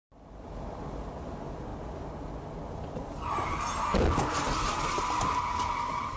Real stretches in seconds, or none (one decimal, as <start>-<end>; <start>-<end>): 0.0-6.2